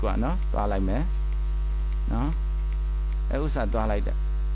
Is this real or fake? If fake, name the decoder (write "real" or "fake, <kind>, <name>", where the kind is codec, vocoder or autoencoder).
real